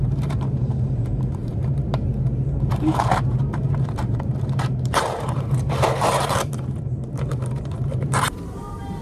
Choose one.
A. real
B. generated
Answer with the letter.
B